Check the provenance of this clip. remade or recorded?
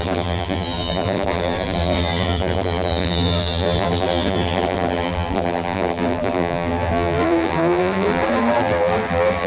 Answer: remade